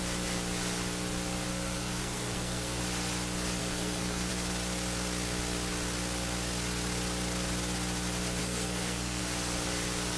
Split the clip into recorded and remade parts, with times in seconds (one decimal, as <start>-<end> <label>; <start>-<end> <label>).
0.0-1.5 recorded; 1.5-2.8 remade; 2.8-3.6 recorded; 3.6-4.3 remade; 4.3-8.4 recorded; 8.4-9.2 remade; 9.2-10.2 recorded